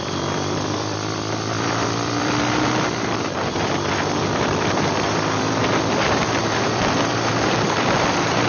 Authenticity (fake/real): fake